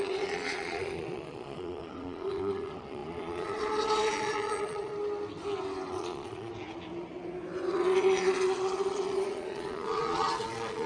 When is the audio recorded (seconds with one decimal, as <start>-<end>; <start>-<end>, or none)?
4.9-5.9; 6.5-7.7